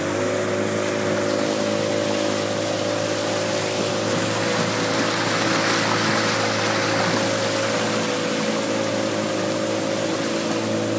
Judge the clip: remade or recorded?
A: recorded